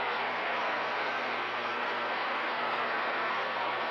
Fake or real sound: fake